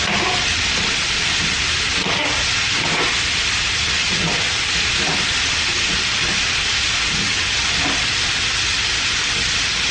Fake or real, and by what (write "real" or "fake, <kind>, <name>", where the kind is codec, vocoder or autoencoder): real